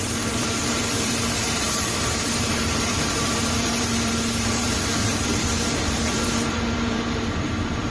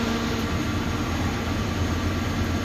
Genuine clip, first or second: second